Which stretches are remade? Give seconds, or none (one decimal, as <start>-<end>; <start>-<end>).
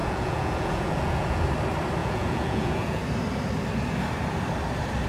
0.0-1.4; 2.0-3.0